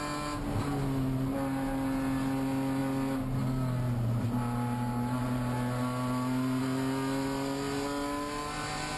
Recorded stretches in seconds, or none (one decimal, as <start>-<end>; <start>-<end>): 0.0-9.0